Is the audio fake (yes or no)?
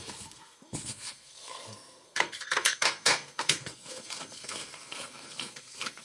yes